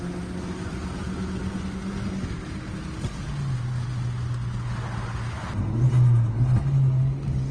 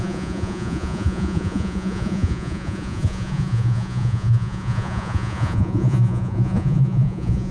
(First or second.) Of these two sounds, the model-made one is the second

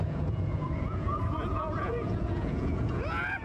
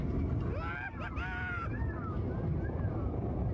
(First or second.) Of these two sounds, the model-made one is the first